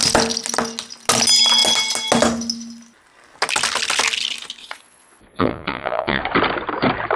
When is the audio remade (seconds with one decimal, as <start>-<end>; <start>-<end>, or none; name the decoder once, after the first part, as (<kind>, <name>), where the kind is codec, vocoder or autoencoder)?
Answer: 4.6-6.2 (vocoder, Vocos)